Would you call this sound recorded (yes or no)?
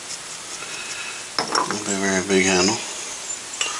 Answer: yes